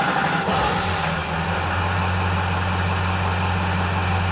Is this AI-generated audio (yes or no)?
no